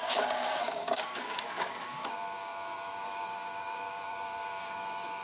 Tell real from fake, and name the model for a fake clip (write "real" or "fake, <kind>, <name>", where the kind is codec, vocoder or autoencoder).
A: fake, codec, DAC